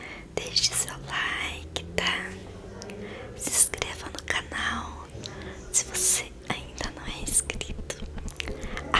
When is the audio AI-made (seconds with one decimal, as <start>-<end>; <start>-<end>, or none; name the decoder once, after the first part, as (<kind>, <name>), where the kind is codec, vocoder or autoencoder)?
none